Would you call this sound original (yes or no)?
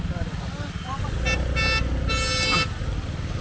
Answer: yes